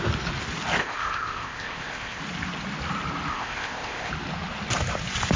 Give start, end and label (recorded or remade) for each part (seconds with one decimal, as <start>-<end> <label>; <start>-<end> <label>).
0.0-0.8 recorded; 0.8-2.2 remade; 2.2-3.3 recorded; 3.3-4.1 remade; 4.1-5.4 recorded